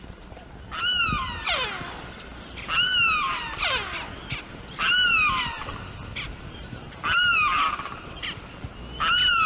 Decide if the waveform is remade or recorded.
recorded